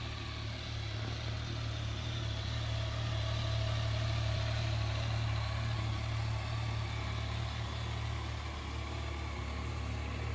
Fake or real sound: real